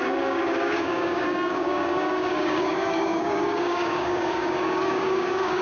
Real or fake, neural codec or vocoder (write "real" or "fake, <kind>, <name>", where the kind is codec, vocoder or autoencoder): fake, codec, DAC